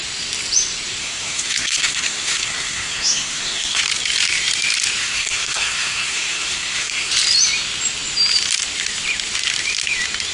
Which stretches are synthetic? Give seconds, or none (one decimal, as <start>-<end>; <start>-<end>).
1.0-3.8; 5.0-7.1